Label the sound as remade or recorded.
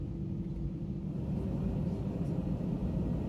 recorded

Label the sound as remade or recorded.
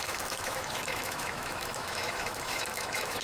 remade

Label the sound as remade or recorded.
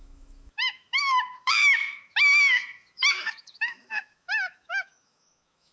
remade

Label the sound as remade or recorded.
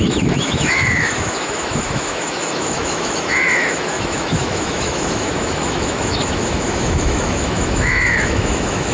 remade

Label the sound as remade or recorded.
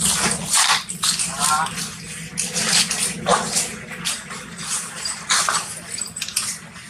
recorded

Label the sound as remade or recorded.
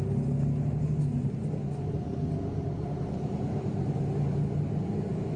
recorded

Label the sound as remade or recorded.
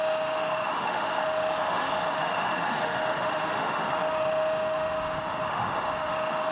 remade